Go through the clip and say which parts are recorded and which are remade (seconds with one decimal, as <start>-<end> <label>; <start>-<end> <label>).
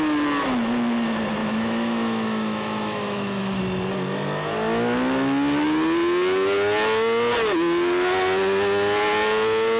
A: 0.0-1.4 recorded; 1.4-3.6 remade; 3.6-9.8 recorded